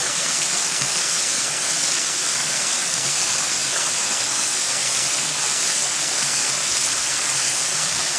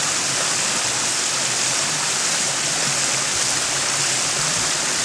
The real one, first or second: second